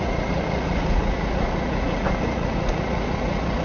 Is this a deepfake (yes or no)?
yes